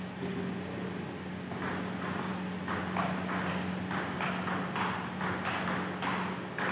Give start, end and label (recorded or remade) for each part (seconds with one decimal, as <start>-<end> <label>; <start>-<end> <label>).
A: 0.0-6.7 recorded